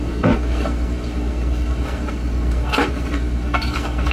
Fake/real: fake